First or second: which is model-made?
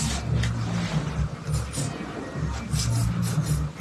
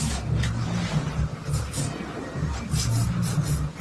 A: second